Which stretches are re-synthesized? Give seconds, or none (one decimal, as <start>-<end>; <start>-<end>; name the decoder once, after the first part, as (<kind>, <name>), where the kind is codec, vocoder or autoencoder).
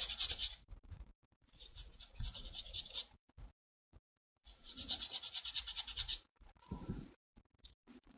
0.0-8.2 (vocoder, Vocos)